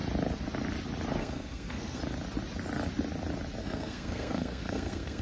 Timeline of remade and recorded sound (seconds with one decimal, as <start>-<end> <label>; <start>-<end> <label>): 0.0-1.2 recorded; 1.2-2.0 remade; 2.0-3.6 recorded; 3.6-5.2 remade